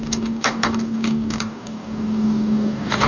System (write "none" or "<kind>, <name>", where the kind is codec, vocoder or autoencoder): codec, DAC